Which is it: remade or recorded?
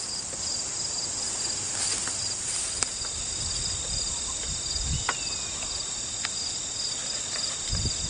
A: recorded